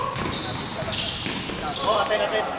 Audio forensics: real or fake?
real